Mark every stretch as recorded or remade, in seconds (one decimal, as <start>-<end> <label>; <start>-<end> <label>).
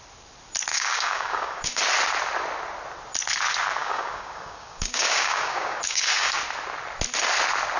0.0-0.7 recorded; 0.7-1.8 remade; 1.8-3.8 recorded; 3.8-6.4 remade; 6.4-7.8 recorded